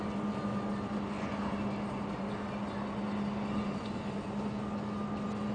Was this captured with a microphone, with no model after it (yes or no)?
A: yes